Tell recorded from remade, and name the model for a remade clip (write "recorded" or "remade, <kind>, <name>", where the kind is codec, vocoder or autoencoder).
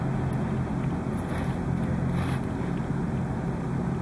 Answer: recorded